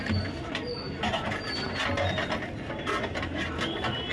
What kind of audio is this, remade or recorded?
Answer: recorded